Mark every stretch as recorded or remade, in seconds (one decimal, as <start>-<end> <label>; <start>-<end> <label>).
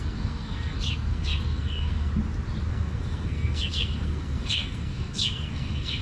0.0-2.1 remade; 2.1-2.7 recorded; 2.7-6.0 remade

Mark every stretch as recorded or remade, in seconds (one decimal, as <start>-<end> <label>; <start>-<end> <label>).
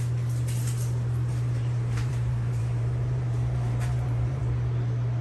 0.0-1.3 recorded; 1.3-4.4 remade; 4.4-5.2 recorded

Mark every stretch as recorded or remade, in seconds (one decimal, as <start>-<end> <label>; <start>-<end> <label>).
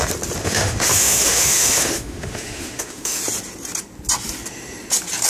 0.0-0.4 recorded; 0.4-3.2 remade; 3.2-5.3 recorded